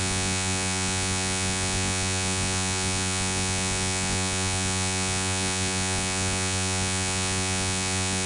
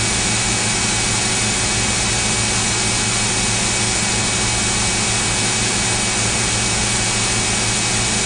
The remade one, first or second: first